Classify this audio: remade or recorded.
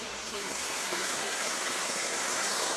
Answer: remade